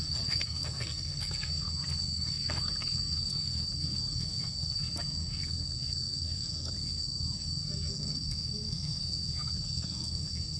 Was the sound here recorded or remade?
remade